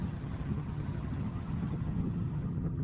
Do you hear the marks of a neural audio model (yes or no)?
yes